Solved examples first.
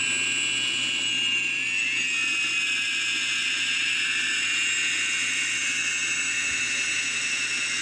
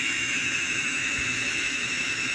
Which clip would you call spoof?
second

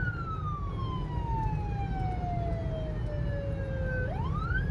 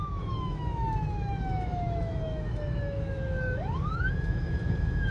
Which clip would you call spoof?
second